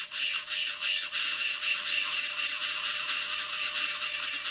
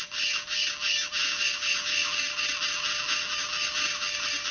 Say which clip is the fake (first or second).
first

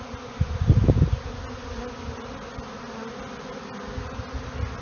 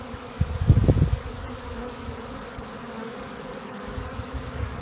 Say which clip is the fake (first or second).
second